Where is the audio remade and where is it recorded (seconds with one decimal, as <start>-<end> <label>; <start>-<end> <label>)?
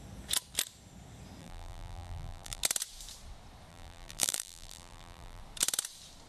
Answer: 0.0-1.4 recorded; 1.4-2.6 remade; 2.6-3.7 recorded; 3.7-5.4 remade; 5.4-6.3 recorded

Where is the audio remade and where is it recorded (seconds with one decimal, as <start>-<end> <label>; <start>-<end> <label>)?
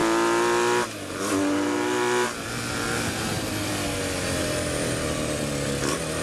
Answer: 0.0-6.2 recorded